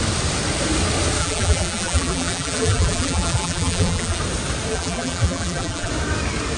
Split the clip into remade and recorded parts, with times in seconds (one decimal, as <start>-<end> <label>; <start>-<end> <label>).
0.0-1.2 recorded; 1.2-4.2 remade; 4.2-4.7 recorded; 4.7-5.9 remade; 5.9-6.6 recorded